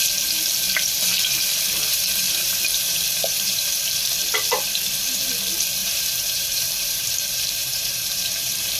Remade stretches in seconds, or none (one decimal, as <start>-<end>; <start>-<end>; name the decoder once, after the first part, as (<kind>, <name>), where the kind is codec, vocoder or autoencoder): 2.7-4.0 (vocoder, BigVGAN v2); 5.8-8.8

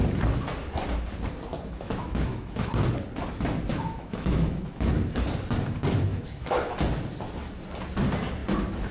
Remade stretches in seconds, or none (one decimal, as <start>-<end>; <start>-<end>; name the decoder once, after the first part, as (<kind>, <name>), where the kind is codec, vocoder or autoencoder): 1.5-2.7 (autoencoder, DAC-VAE); 3.7-4.9; 6.1-6.7